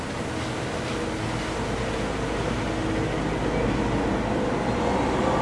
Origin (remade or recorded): recorded